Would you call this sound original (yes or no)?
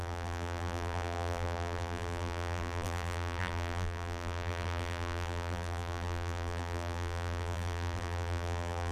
no